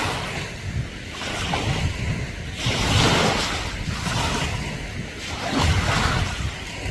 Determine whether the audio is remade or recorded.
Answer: recorded